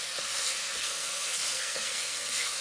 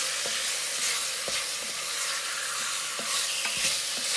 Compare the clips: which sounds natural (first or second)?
second